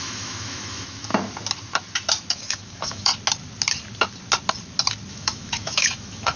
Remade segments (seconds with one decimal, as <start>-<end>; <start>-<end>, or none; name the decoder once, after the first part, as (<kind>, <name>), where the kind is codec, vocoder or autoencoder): 0.0-1.1 (autoencoder, DAC-VAE); 2.3-3.1; 5.1-6.4